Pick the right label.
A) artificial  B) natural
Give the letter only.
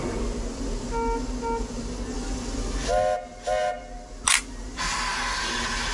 B